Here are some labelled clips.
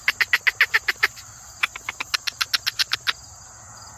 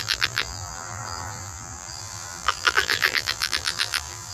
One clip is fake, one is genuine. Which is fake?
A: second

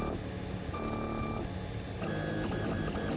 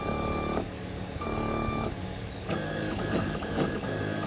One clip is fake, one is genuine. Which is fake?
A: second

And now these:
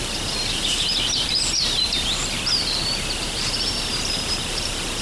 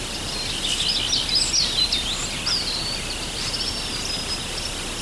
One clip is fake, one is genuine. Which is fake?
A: first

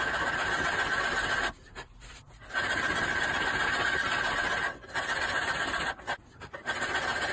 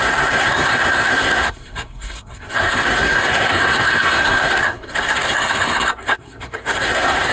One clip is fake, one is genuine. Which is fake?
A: second